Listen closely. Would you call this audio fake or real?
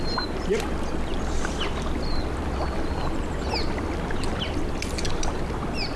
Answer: real